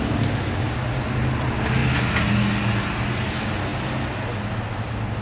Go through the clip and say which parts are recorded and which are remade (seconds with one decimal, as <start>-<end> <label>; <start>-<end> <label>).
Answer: 0.0-5.2 recorded